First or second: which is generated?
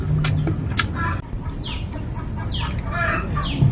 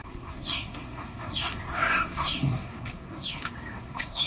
second